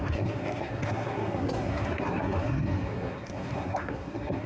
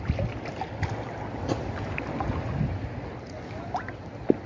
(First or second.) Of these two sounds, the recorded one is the second